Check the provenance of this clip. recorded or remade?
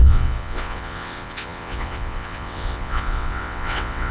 remade